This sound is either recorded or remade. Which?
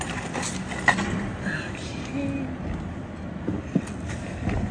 recorded